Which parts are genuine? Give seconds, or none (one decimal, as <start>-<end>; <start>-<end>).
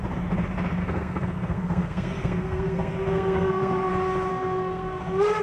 0.0-0.8; 3.9-4.3; 5.0-5.4